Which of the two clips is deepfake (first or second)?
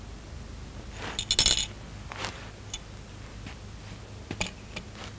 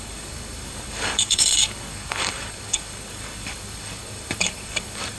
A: second